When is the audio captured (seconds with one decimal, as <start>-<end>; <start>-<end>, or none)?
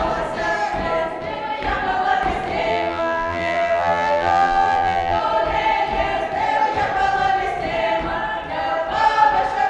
0.0-2.7; 5.2-9.7